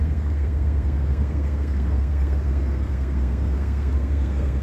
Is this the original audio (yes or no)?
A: no